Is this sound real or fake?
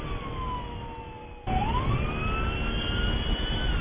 real